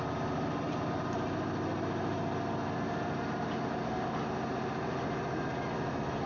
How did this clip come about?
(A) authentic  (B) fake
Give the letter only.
A